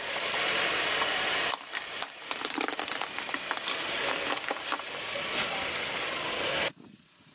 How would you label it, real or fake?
real